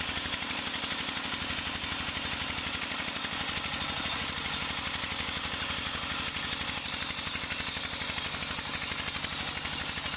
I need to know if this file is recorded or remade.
recorded